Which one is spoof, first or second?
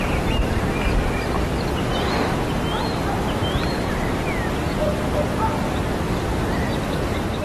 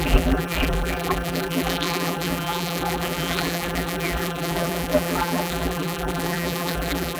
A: second